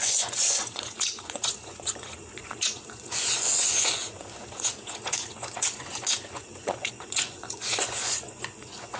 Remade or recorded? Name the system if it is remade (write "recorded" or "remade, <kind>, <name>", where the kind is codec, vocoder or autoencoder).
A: remade, vocoder, Vocos